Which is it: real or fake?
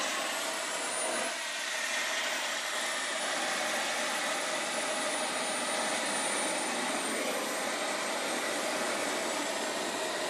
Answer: real